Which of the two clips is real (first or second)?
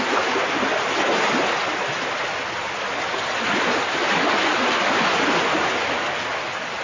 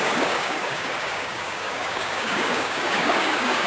first